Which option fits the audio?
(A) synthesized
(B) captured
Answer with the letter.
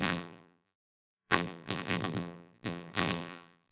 A